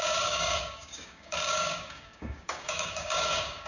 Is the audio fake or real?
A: fake